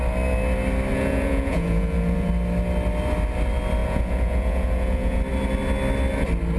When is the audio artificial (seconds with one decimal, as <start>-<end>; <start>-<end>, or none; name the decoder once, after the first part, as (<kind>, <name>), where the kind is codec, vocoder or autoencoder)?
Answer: 0.9-2.3 (vocoder, Vocos); 3.8-5.2